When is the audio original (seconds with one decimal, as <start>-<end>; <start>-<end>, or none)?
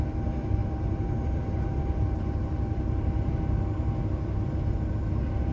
0.0-0.6; 3.9-5.5